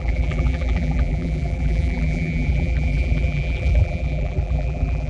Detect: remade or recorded remade